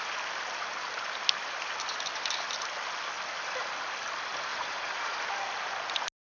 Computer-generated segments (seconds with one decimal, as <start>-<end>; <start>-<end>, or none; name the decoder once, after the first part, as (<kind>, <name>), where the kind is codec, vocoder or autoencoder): 4.5-5.2 (vocoder, Vocos)